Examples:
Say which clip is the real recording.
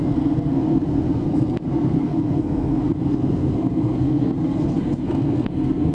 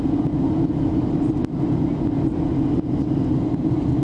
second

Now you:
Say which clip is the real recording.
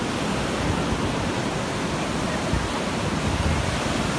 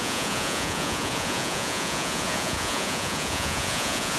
first